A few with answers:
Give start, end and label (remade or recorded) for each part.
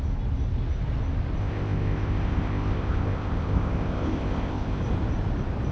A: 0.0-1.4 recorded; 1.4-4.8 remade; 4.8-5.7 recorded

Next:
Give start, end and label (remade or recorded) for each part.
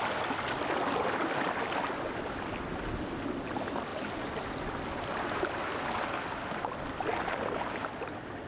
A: 0.0-8.5 recorded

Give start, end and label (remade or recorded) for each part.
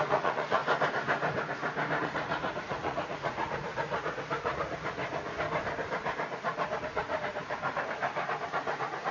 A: 0.0-0.6 remade; 0.6-2.0 recorded; 2.0-5.0 remade; 5.0-6.8 recorded; 6.8-7.4 remade; 7.4-8.5 recorded; 8.5-9.1 remade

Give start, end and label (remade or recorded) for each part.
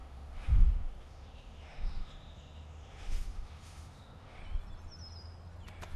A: 0.0-4.4 remade; 4.4-6.0 recorded